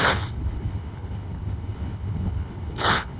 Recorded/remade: remade